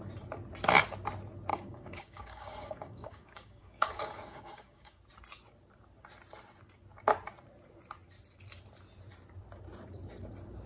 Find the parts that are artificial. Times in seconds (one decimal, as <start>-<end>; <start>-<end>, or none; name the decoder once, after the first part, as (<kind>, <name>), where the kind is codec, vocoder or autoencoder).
1.5-5.0 (codec, DAC)